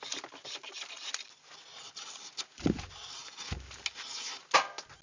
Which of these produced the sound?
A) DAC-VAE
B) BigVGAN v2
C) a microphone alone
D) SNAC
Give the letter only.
C